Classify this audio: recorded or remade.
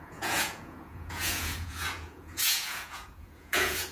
remade